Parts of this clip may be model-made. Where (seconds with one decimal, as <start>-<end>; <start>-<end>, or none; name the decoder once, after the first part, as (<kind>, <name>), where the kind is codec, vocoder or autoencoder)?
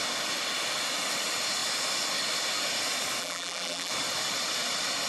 3.2-3.9 (vocoder, BigVGAN v2)